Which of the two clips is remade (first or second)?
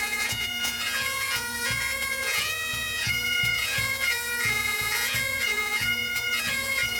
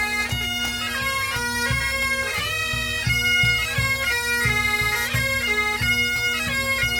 first